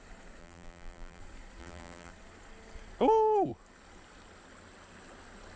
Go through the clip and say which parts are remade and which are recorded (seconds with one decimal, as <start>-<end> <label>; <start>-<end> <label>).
0.0-0.4 recorded; 0.4-1.2 remade; 1.2-1.6 recorded; 1.6-2.1 remade; 2.1-5.6 recorded